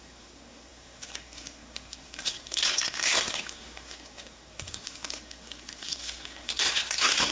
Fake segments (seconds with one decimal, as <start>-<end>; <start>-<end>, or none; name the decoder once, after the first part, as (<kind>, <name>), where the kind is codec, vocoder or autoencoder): 0.0-7.3 (codec, SNAC)